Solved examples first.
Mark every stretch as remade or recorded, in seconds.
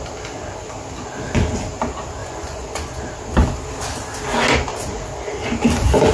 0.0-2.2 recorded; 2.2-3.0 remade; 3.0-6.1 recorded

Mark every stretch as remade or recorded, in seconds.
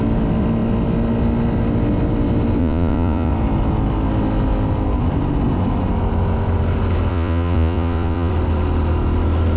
0.0-2.6 recorded; 2.6-3.3 remade; 3.3-7.1 recorded; 7.1-8.3 remade; 8.3-9.6 recorded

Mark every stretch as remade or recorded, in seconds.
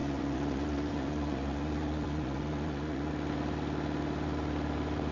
0.0-3.1 remade; 3.1-5.1 recorded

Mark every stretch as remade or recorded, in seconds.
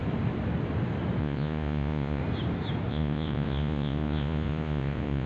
0.0-1.2 recorded; 1.2-2.2 remade; 2.2-2.9 recorded; 2.9-5.3 remade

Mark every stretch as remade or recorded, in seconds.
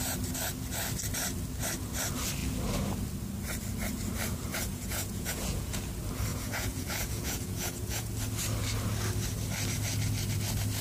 0.0-4.5 recorded; 4.5-5.8 remade; 5.8-6.3 recorded; 6.3-8.1 remade; 8.1-10.8 recorded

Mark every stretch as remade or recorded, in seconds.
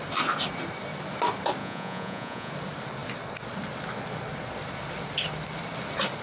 0.0-1.6 recorded; 1.6-2.5 remade; 2.5-6.2 recorded